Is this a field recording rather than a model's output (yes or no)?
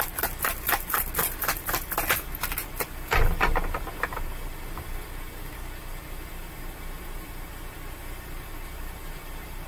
yes